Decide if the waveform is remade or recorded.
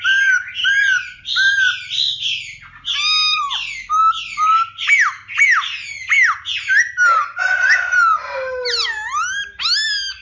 recorded